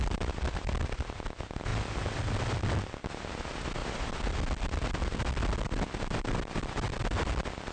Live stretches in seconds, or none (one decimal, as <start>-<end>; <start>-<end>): 0.0-7.7